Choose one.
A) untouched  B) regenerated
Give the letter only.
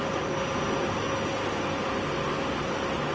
A